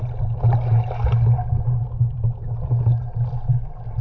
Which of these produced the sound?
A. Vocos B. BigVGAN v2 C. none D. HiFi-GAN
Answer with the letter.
C